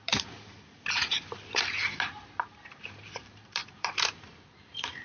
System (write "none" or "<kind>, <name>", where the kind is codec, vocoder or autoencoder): vocoder, BigVGAN v2